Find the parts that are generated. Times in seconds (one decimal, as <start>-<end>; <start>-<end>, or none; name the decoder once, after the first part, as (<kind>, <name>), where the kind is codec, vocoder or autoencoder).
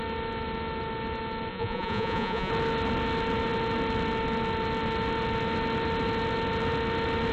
1.5-2.5 (vocoder, Vocos)